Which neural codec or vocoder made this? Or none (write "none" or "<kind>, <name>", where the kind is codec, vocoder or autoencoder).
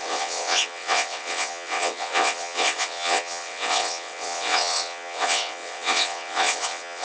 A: vocoder, WaveNeXt